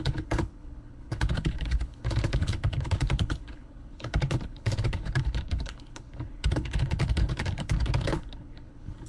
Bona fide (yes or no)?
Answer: no